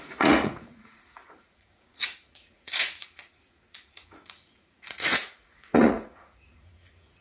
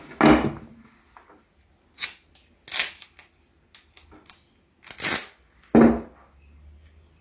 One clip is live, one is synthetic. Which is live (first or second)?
second